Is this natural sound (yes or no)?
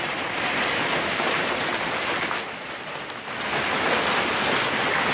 yes